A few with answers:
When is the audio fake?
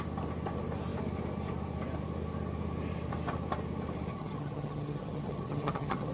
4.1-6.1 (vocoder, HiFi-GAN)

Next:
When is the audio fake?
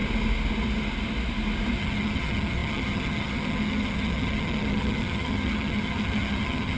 1.8-6.8 (vocoder, HiFi-GAN)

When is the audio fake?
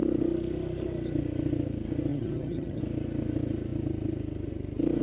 2.1-2.8 (vocoder, HiFi-GAN)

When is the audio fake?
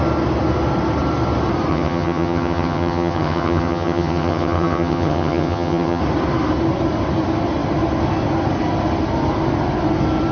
1.7-6.0 (vocoder, HiFi-GAN)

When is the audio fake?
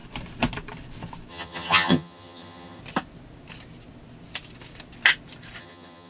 1.3-2.8 (vocoder, HiFi-GAN); 5.6-6.1